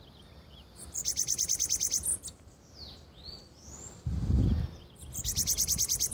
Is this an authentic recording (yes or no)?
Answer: yes